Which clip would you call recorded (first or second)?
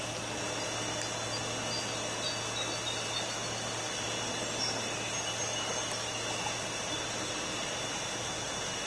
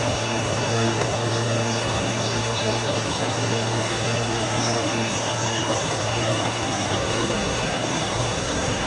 first